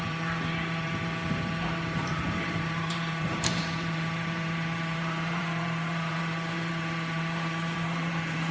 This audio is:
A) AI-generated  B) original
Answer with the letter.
A